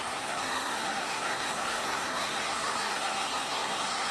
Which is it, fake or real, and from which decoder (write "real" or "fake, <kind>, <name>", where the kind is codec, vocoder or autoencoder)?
fake, codec, SNAC